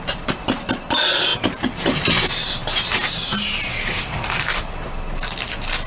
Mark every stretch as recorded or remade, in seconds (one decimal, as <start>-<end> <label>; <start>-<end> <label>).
0.0-5.9 recorded